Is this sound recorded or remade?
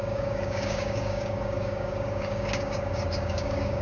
remade